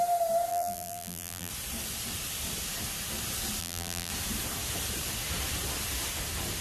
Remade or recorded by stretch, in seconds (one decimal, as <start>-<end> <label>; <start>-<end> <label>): 0.0-0.5 recorded; 0.5-1.5 remade; 1.5-3.6 recorded; 3.6-4.1 remade; 4.1-6.6 recorded